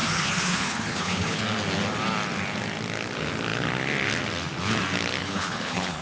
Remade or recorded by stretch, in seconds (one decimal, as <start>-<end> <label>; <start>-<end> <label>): 0.0-1.4 remade; 1.4-5.2 recorded; 5.2-6.0 remade